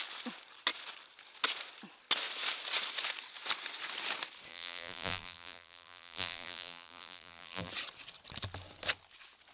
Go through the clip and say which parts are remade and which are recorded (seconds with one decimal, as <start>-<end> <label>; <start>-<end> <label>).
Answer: 0.0-4.5 recorded; 4.5-7.7 remade; 7.7-9.5 recorded